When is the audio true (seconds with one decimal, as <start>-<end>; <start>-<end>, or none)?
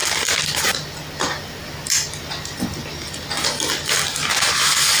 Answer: 0.0-5.0